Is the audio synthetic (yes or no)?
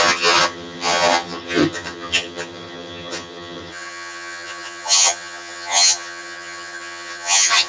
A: yes